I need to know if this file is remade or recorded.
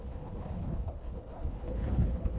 remade